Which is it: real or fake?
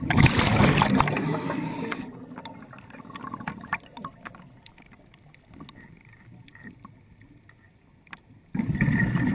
real